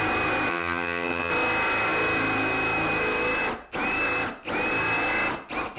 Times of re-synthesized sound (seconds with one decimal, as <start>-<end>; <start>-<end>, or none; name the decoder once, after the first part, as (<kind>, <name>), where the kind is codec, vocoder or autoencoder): 0.5-1.3 (vocoder, HiFi-GAN)